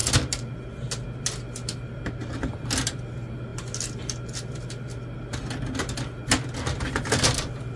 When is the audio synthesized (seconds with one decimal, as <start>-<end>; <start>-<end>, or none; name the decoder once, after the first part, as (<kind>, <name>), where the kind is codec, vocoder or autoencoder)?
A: none